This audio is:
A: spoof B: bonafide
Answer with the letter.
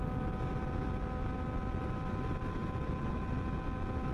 B